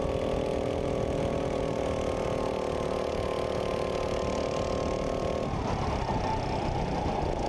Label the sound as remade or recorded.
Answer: recorded